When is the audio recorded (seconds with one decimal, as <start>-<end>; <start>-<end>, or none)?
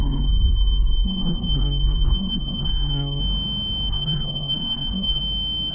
3.2-3.9; 5.2-5.7